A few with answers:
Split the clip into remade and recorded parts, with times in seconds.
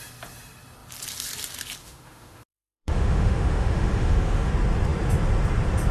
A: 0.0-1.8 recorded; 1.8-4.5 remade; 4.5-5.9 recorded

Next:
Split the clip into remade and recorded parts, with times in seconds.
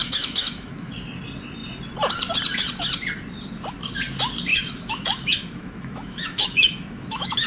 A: 0.0-0.9 remade; 0.9-4.5 recorded; 4.5-7.5 remade